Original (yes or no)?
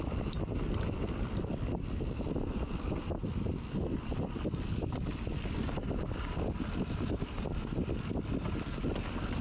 yes